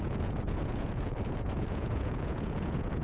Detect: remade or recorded remade